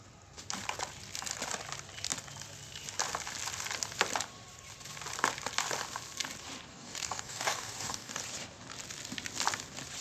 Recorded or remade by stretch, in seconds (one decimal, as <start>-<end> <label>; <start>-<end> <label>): 0.0-6.7 recorded; 6.7-8.2 remade; 8.2-10.0 recorded